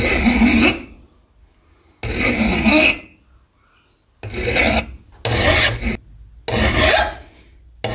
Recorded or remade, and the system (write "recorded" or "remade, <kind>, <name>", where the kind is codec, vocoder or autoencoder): recorded